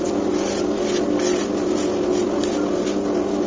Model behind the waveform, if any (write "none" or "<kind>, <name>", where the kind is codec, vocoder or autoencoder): none